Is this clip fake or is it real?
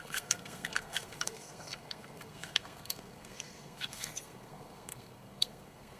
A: fake